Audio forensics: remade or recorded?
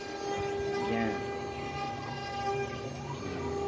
recorded